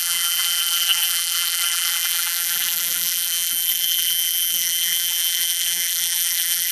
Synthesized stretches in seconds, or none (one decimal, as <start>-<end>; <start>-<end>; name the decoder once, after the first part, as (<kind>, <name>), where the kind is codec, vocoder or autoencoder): 0.0-6.7 (vocoder, BigVGAN v2)